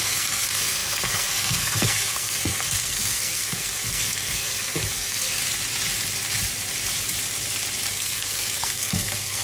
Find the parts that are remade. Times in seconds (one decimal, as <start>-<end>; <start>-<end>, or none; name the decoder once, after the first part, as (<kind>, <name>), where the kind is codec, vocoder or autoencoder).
0.0-5.4 (codec, SNAC); 7.9-9.4